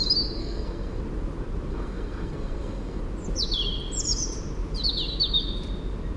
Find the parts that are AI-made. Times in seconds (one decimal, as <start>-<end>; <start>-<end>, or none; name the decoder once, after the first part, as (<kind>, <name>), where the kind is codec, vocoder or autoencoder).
0.4-1.0 (codec, SNAC); 1.7-3.0